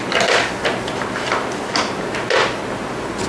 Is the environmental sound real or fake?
real